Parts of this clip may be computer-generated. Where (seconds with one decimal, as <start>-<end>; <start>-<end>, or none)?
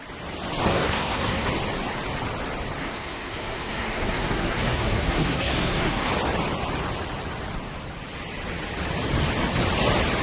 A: 0.7-1.5; 2.8-6.1